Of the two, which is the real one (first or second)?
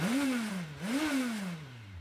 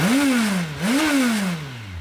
second